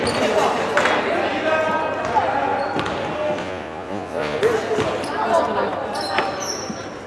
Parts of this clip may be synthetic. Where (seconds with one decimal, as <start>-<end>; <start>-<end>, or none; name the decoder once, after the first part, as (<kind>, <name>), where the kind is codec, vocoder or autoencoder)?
3.4-4.4 (vocoder, Vocos)